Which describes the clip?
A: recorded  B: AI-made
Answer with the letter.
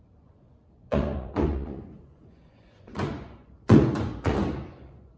B